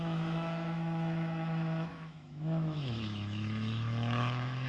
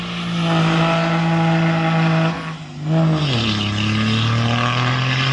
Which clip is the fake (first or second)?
first